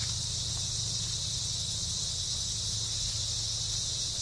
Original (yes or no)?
yes